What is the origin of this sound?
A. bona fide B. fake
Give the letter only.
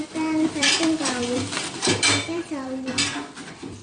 B